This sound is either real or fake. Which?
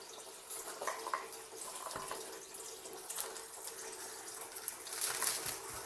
real